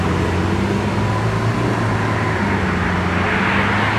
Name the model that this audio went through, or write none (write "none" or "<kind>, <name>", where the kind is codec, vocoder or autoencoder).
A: none